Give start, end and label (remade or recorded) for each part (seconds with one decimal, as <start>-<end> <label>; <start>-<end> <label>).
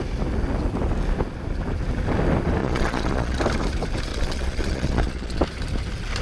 0.0-2.6 recorded; 2.6-3.4 remade; 3.4-4.1 recorded; 4.1-5.4 remade; 5.4-6.2 recorded